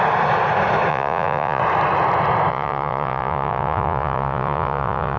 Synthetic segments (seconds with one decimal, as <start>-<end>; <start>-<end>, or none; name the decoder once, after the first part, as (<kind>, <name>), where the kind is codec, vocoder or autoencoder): 0.9-1.6 (vocoder, Vocos); 2.5-5.2